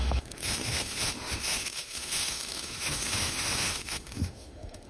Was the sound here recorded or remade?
remade